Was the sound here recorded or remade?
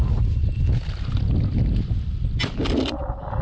recorded